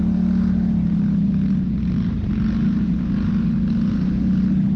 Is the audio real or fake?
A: real